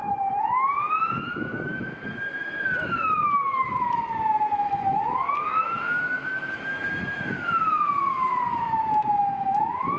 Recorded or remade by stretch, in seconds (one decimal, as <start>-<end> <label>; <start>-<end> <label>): 0.0-10.0 remade